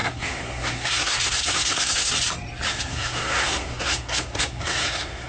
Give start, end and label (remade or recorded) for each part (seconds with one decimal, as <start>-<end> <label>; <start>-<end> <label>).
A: 0.0-2.1 remade; 2.1-2.7 recorded; 2.7-5.3 remade